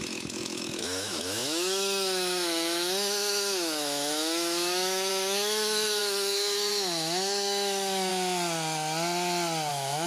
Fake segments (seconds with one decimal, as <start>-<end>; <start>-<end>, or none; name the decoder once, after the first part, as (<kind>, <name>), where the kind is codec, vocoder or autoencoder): 0.0-8.1 (autoencoder, DAC-VAE); 9.7-10.1

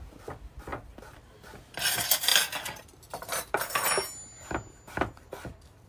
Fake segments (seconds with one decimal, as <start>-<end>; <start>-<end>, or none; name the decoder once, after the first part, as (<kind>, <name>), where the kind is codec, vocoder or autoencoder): none